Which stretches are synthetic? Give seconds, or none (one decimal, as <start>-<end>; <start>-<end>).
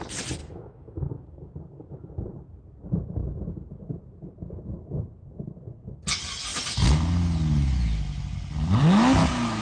0.4-1.4